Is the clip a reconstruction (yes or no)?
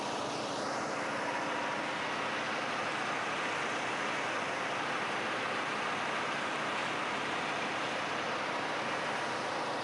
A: no